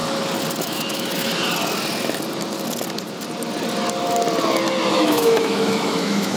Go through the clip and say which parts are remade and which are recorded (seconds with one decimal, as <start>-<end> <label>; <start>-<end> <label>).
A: 0.0-0.6 recorded; 0.6-1.3 remade; 1.3-4.9 recorded; 4.9-6.4 remade